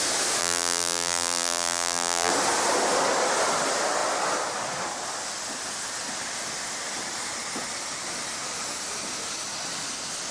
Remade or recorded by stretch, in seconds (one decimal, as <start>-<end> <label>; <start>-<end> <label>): 0.0-0.4 recorded; 0.4-2.3 remade; 2.3-10.3 recorded